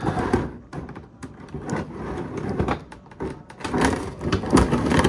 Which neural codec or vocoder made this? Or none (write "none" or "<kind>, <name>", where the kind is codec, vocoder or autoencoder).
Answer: none